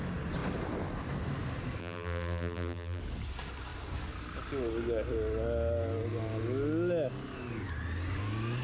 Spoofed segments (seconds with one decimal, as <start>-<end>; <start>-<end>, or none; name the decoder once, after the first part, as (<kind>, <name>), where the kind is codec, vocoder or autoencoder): 1.8-3.0 (vocoder, BigVGAN v2)

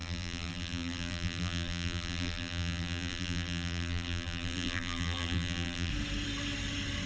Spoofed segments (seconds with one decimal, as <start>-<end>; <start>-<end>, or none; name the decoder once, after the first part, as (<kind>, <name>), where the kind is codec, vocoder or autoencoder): 0.0-5.9 (vocoder, BigVGAN v2)

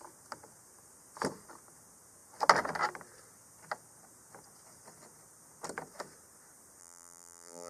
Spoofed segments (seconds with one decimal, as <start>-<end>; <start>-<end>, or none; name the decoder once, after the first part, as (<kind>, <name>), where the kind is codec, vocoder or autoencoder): 6.8-7.7 (vocoder, BigVGAN v2)

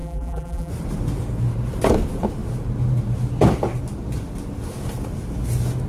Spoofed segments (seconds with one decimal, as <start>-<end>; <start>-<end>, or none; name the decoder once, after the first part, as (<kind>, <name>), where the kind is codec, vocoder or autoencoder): 0.0-0.7 (vocoder, BigVGAN v2)

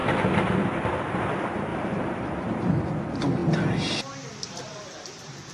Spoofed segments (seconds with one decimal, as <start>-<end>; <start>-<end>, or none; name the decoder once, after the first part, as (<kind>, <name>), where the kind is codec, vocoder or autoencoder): 1.7-2.7 (vocoder, BigVGAN v2)

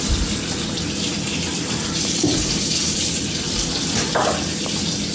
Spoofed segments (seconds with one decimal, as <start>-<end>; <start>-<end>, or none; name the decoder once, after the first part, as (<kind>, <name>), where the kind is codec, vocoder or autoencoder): 2.3-3.5 (vocoder, BigVGAN v2)

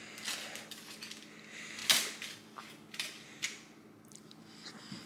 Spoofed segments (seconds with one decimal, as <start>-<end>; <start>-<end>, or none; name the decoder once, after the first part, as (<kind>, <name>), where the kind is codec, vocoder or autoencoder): none